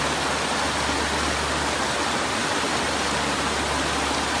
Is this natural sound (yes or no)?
yes